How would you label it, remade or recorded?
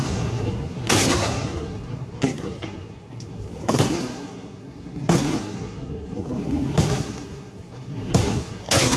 remade